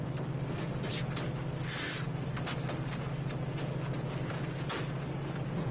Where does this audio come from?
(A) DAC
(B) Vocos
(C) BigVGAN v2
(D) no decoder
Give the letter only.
D